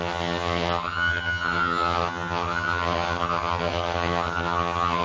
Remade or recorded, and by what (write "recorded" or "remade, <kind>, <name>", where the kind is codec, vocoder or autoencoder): remade, vocoder, HiFi-GAN